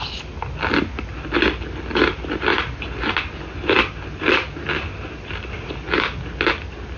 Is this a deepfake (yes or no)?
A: no